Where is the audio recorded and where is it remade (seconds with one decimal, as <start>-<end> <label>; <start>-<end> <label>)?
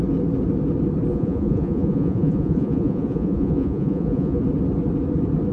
0.0-1.1 recorded; 1.1-4.4 remade; 4.4-5.5 recorded